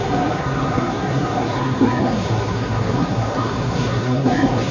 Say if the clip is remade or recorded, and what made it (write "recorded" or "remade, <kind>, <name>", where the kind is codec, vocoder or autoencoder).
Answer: remade, codec, SNAC